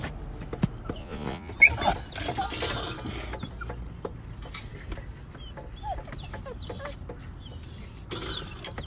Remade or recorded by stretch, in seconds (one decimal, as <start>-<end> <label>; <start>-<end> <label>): 0.0-1.0 recorded; 1.0-1.5 remade; 1.5-8.9 recorded